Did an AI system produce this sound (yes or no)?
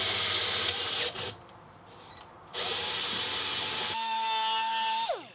no